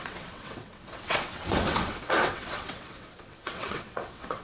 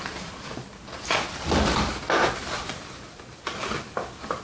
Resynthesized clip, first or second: first